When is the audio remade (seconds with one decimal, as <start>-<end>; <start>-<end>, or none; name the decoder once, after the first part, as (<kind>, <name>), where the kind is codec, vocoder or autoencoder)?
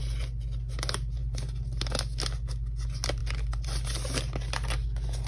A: none